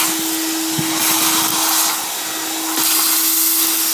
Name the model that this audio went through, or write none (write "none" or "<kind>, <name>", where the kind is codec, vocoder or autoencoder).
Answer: none